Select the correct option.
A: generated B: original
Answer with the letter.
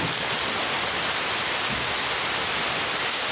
B